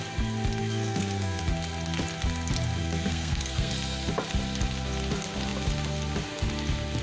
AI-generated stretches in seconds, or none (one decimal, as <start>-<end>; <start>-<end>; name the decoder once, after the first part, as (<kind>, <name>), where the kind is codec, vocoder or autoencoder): 0.6-1.4 (codec, SNAC); 2.8-3.7